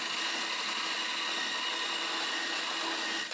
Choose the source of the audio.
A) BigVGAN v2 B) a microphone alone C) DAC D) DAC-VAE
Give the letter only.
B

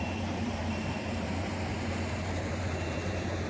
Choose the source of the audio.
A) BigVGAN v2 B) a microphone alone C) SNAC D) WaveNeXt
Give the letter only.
A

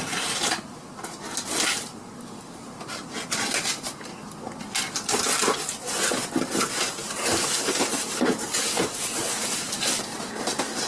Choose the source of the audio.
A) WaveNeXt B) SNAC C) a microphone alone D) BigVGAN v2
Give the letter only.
C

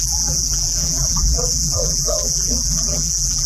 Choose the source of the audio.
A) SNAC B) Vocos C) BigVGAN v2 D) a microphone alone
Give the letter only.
C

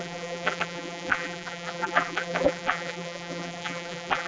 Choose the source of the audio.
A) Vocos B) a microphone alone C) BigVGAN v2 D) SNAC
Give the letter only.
C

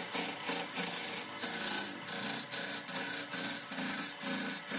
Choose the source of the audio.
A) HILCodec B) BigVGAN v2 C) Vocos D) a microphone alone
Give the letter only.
D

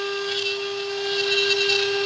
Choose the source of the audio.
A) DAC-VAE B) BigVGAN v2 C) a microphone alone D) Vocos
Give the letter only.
C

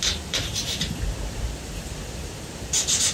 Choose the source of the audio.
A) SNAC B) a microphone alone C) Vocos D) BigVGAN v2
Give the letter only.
D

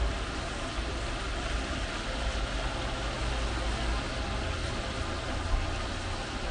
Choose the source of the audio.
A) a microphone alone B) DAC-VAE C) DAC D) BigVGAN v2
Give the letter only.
A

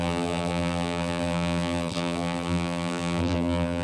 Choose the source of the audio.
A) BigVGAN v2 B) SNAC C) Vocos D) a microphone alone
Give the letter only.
A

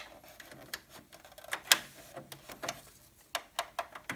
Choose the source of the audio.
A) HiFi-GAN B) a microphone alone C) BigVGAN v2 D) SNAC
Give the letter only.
B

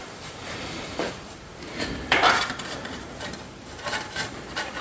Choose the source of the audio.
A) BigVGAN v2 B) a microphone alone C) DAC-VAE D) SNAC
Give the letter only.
A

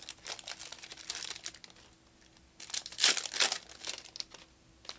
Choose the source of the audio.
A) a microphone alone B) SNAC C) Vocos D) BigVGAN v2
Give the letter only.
A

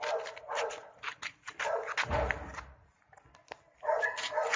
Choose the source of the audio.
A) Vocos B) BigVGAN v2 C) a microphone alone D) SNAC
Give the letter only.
C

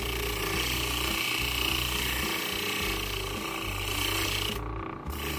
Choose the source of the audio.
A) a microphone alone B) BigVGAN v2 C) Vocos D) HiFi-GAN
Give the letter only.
A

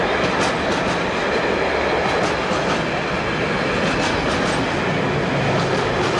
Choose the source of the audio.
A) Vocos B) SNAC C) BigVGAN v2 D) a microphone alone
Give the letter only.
D